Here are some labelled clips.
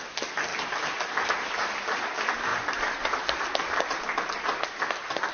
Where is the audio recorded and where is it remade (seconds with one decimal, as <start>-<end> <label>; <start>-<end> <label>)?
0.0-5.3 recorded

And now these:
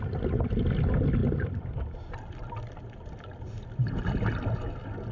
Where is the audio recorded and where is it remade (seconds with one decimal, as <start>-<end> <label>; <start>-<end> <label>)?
0.0-1.2 recorded; 1.2-1.8 remade; 1.8-5.1 recorded

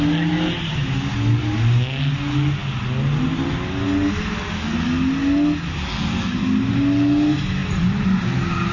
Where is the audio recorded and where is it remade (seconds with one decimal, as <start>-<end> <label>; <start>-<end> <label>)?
0.0-8.7 recorded

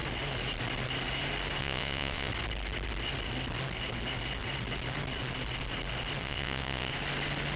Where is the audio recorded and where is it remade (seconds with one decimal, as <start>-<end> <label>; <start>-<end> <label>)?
0.0-1.6 recorded; 1.6-2.3 remade; 2.3-6.2 recorded; 6.2-6.9 remade; 6.9-7.6 recorded

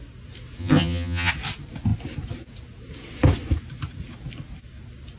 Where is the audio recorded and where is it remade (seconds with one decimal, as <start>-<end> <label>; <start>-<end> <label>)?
0.0-0.6 recorded; 0.6-1.3 remade; 1.3-5.2 recorded